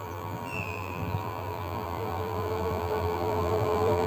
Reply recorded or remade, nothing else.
remade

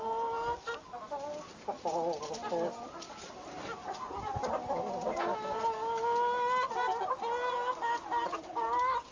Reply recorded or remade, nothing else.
recorded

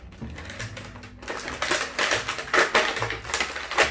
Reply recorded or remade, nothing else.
recorded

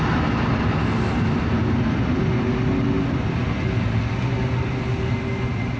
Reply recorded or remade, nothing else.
recorded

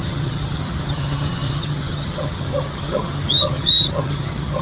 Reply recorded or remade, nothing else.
remade